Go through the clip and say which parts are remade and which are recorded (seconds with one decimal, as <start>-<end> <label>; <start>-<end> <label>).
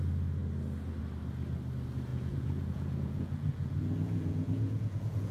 0.0-2.1 recorded; 2.1-5.3 remade